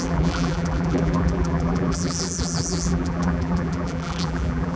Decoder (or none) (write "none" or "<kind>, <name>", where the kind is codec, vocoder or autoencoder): vocoder, BigVGAN v2